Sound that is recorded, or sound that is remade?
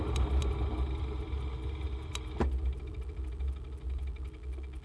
recorded